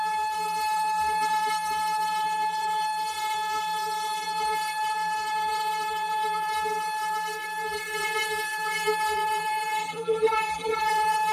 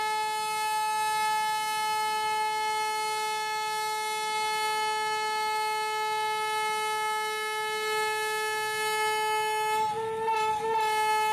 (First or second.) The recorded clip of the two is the second